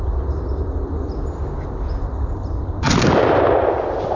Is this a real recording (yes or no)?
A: yes